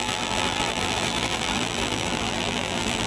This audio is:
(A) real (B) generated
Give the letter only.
B